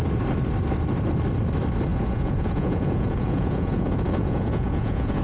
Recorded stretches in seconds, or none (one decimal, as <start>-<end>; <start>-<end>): 0.0-1.9